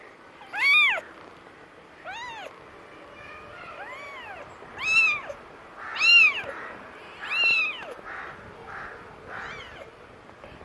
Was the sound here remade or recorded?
recorded